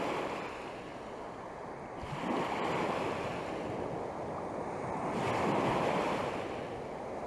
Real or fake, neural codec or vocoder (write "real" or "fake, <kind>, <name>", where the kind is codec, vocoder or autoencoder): real